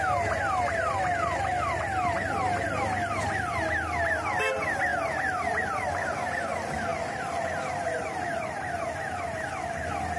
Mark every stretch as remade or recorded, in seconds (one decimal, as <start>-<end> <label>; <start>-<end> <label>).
0.0-4.9 recorded; 4.9-6.4 remade; 6.4-6.9 recorded; 6.9-8.7 remade; 8.7-10.2 recorded

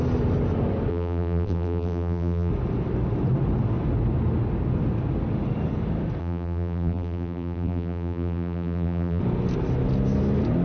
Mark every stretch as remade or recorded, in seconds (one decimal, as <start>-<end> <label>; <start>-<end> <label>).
0.0-0.9 recorded; 0.9-2.5 remade; 2.5-6.2 recorded; 6.2-9.2 remade; 9.2-10.6 recorded

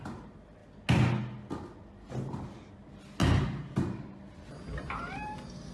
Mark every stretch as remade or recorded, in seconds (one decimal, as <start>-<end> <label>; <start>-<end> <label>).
0.0-3.2 recorded; 3.2-4.5 remade; 4.5-5.7 recorded